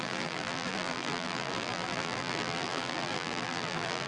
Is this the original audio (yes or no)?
no